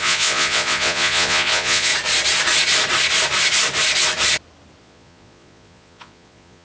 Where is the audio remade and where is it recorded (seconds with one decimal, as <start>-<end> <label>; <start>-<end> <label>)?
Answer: 0.0-1.9 remade; 1.9-4.8 recorded; 4.8-6.6 remade